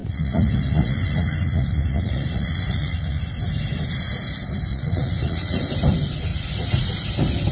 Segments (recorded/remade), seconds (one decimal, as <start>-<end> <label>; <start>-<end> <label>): 0.0-3.3 remade; 3.3-4.7 recorded; 4.7-5.6 remade; 5.6-6.3 recorded; 6.3-6.9 remade; 6.9-7.5 recorded